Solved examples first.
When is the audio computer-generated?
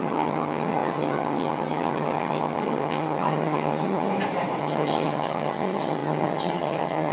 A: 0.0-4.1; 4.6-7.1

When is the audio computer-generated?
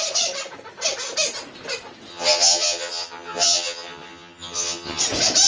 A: 2.1-5.0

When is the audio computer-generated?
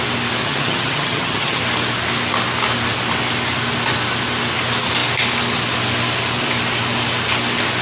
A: 0.4-1.6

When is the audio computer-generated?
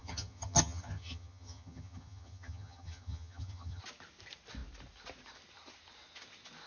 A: 0.0-3.8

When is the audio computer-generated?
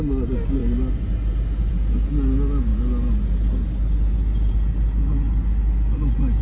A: none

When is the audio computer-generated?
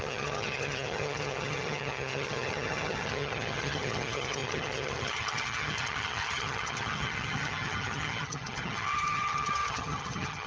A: 0.0-10.5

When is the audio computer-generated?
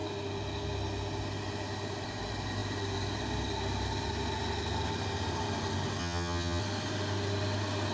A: 6.0-6.6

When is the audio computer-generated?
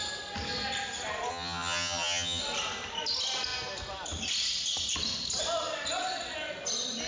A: 1.3-2.4